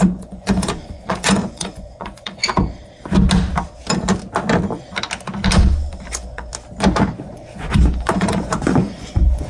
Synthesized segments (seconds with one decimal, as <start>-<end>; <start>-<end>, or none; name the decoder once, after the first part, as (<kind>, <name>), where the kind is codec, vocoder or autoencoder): 0.0-2.4 (vocoder, Vocos); 6.1-6.5; 7.2-9.5